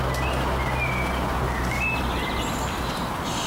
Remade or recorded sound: recorded